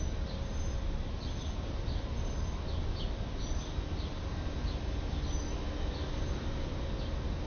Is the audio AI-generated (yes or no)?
no